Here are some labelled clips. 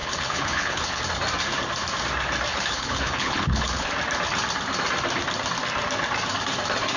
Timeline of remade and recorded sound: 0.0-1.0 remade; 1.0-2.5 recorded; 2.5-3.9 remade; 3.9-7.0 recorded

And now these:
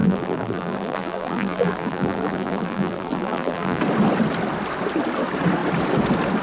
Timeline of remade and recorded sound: 0.0-3.8 remade; 3.8-6.4 recorded

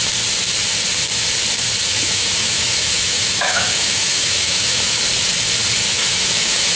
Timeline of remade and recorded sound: 0.0-1.8 recorded; 1.8-5.0 remade; 5.0-5.9 recorded; 5.9-6.8 remade

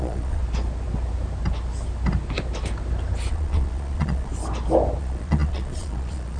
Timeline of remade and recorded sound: 0.0-0.4 remade; 0.4-3.3 recorded; 3.3-4.3 remade; 4.3-5.0 recorded; 5.0-6.4 remade

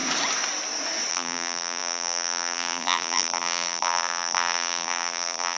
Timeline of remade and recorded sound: 0.0-1.1 recorded; 1.1-5.6 remade

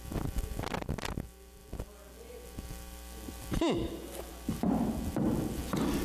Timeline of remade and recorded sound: 0.0-6.0 recorded